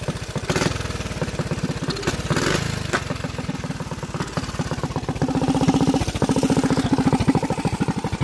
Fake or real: real